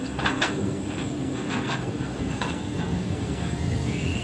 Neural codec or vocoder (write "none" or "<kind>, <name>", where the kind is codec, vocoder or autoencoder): codec, SNAC